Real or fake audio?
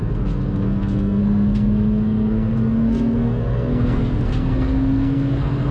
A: fake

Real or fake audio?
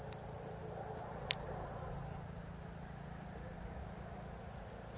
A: real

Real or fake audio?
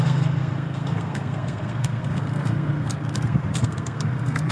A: fake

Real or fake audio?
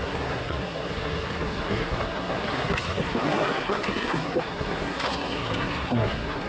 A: fake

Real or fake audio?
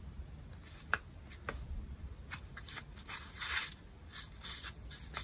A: real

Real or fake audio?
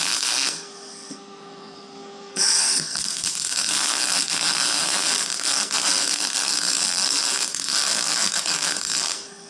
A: fake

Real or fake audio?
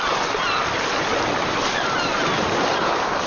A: real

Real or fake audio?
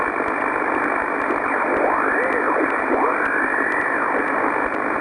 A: real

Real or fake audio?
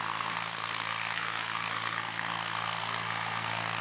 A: fake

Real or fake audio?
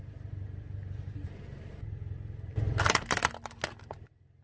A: real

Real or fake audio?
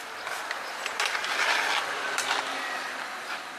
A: real